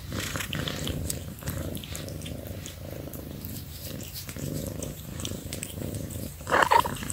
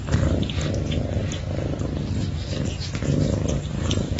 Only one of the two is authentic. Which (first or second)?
second